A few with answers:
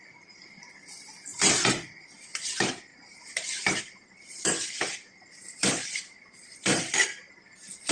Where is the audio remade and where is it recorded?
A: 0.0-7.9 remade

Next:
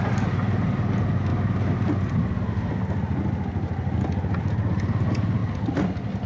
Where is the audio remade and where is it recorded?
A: 0.0-1.3 recorded; 1.3-2.5 remade; 2.5-6.3 recorded

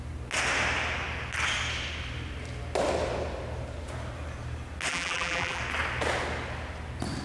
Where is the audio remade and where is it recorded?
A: 0.0-4.9 recorded; 4.9-5.6 remade; 5.6-7.2 recorded

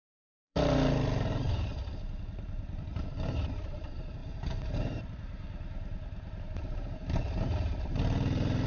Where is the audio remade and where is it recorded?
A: 0.0-1.7 remade; 1.7-2.2 recorded; 2.2-8.7 remade